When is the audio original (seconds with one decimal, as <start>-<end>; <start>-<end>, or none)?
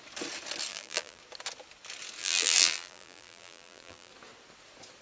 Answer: 0.0-0.7; 1.2-2.2; 4.1-5.0